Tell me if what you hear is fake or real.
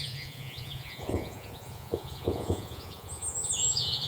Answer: fake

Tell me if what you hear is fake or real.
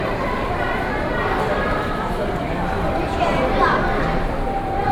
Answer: fake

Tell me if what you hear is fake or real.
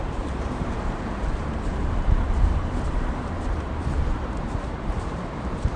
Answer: fake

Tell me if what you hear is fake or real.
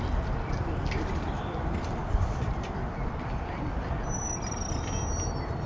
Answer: fake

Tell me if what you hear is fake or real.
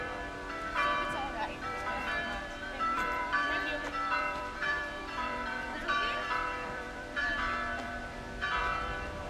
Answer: fake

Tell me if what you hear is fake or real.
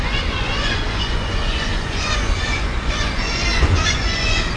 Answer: fake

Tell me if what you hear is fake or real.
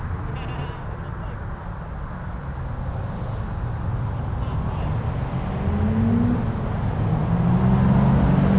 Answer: real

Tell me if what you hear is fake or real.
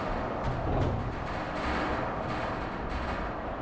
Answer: real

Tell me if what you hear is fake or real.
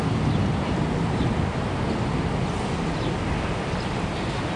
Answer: real